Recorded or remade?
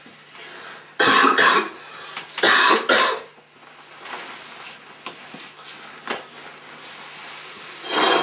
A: recorded